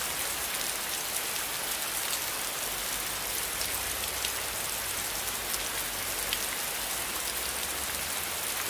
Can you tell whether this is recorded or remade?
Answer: recorded